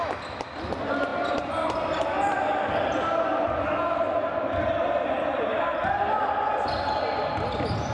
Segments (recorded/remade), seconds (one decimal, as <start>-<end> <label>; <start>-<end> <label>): 0.0-1.1 recorded; 1.1-5.6 remade; 5.6-7.9 recorded